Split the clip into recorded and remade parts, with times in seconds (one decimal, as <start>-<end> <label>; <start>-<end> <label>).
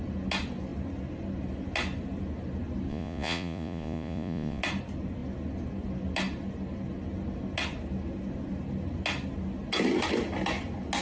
0.0-2.9 recorded; 2.9-4.6 remade; 4.6-11.0 recorded